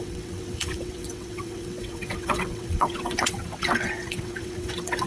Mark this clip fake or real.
fake